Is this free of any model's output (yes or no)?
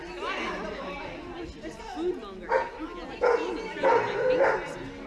yes